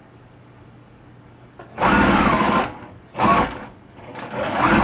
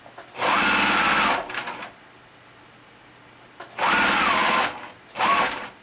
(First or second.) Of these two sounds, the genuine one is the second